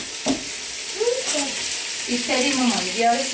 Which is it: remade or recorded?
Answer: recorded